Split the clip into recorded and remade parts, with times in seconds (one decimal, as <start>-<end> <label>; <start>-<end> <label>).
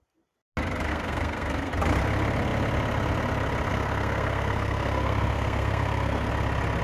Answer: 0.0-0.9 recorded; 0.9-1.7 remade; 1.7-3.7 recorded; 3.7-6.3 remade; 6.3-6.8 recorded